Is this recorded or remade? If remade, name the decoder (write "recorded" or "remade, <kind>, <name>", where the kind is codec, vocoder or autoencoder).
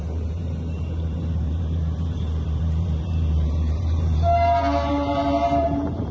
remade, vocoder, BigVGAN v2